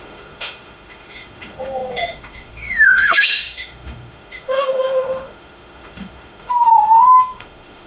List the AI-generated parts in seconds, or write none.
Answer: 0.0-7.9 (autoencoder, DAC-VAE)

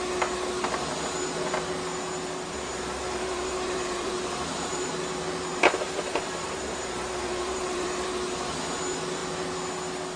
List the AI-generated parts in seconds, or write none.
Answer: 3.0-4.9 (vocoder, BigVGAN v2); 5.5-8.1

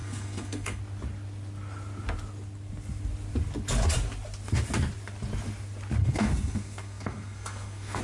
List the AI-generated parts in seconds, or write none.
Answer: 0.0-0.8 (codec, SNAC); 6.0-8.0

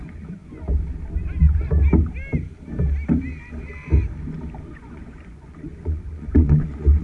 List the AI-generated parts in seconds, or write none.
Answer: 0.0-0.4 (vocoder, Vocos); 4.6-7.0

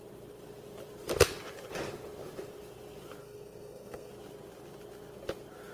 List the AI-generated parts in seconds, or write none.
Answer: 3.2-4.1 (codec, SNAC)

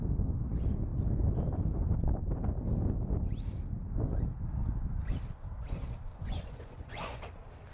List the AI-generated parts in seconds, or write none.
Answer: 6.1-7.2 (vocoder, Vocos)